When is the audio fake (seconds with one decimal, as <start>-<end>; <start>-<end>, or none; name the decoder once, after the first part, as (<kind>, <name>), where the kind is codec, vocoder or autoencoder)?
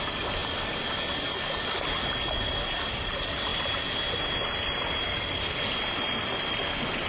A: none